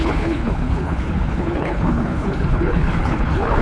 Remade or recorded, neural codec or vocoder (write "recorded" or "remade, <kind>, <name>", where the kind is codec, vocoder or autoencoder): remade, codec, HILCodec